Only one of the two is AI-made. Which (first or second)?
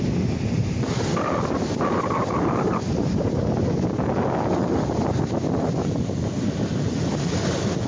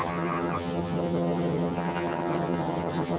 second